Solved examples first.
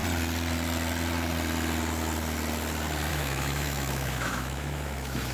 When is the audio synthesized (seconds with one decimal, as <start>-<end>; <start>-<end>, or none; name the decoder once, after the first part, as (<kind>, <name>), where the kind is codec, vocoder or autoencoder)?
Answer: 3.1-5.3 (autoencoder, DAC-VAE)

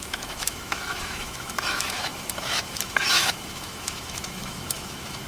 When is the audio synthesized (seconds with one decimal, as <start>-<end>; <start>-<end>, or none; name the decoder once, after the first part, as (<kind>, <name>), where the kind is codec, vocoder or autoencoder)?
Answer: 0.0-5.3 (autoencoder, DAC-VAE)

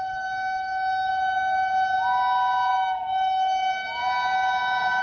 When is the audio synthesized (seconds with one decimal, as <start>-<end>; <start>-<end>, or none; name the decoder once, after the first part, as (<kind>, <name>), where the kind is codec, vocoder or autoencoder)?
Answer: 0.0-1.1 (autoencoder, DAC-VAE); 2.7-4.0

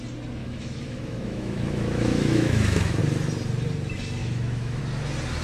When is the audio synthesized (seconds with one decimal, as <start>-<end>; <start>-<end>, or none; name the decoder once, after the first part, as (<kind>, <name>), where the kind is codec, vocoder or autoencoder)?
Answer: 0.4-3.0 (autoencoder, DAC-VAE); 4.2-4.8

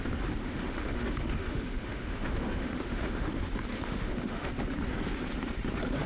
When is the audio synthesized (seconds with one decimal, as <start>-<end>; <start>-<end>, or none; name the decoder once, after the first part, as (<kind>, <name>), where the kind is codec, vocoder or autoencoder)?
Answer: 0.4-3.3 (autoencoder, DAC-VAE); 3.7-4.5

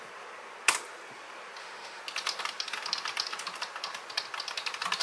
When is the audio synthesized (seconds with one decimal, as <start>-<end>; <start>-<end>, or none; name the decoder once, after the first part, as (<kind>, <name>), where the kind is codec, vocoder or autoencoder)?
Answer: 1.6-2.0 (autoencoder, DAC-VAE)

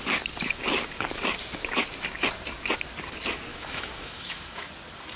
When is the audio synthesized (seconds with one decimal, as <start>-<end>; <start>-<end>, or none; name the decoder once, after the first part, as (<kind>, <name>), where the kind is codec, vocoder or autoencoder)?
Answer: 3.5-4.7 (autoencoder, DAC-VAE)